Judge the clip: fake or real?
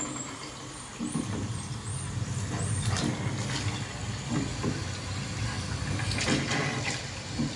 real